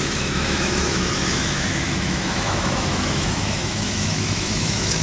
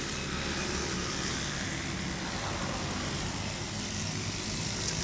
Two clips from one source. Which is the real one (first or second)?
second